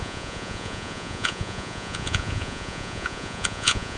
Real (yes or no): no